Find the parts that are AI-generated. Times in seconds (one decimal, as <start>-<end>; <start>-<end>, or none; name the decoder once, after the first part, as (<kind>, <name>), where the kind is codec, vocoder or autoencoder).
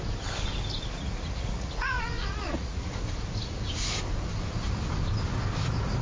1.0-2.9 (vocoder, Vocos)